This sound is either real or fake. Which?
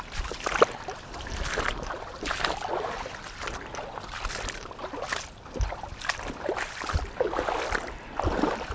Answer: real